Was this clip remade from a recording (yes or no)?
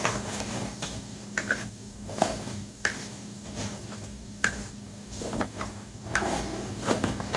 yes